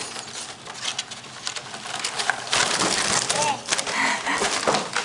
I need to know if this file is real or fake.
real